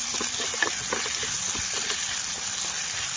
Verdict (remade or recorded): recorded